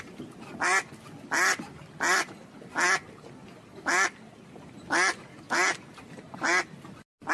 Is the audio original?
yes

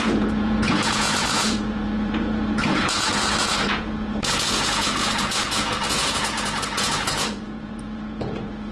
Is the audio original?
no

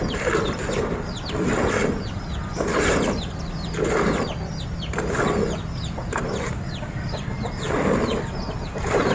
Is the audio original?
yes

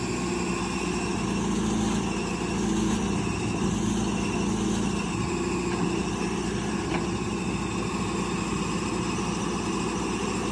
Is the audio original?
yes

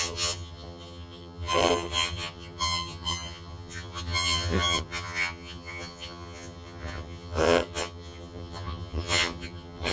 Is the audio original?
no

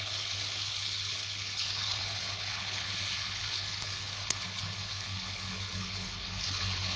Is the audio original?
no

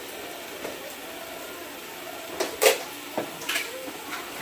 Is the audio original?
yes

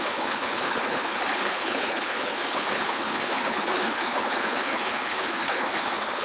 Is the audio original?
no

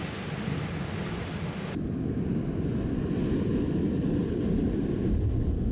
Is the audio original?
yes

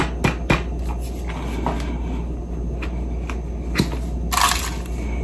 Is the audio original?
yes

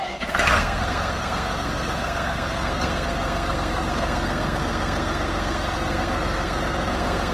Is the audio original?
no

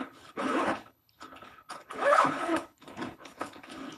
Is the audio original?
no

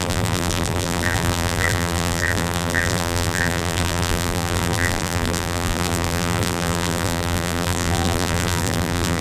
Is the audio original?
no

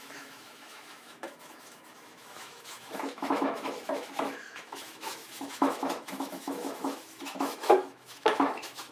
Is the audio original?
no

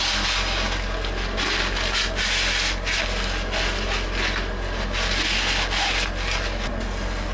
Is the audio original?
yes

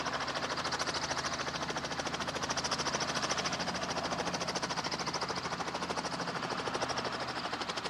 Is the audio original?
yes